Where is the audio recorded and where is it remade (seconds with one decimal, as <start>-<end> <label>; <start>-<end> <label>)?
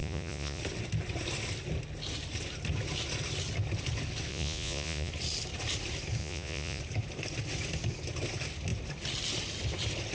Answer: 0.0-0.6 remade; 0.6-4.3 recorded; 4.3-5.1 remade; 5.1-6.2 recorded; 6.2-6.8 remade; 6.8-10.1 recorded